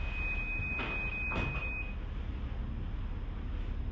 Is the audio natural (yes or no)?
yes